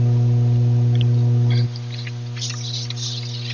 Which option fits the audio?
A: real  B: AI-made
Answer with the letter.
A